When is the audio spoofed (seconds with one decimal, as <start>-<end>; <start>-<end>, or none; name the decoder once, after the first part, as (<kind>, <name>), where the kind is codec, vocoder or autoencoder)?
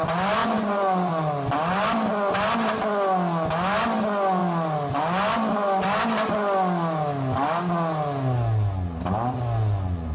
0.4-1.1 (vocoder, Vocos)